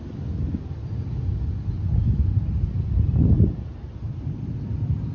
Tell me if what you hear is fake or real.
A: real